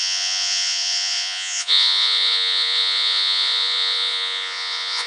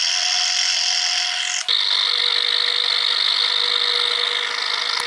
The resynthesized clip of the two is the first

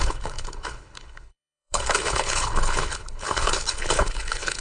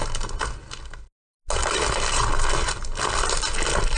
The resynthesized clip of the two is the first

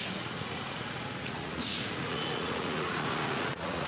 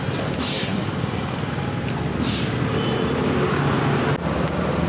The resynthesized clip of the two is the first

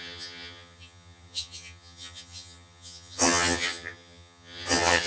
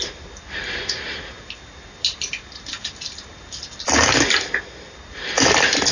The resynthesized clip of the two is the first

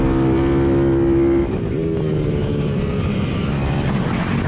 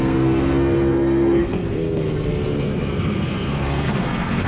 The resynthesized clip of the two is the second